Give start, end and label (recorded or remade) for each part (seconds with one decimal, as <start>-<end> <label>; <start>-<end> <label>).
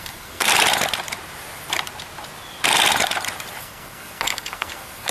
0.0-0.5 remade; 0.5-3.6 recorded; 3.6-5.1 remade